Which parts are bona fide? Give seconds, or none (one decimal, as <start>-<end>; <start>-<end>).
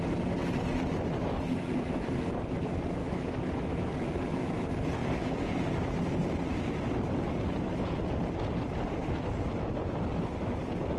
0.0-3.0; 3.9-11.0